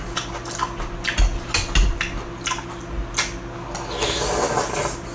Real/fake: real